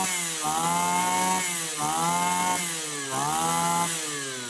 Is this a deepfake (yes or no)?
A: no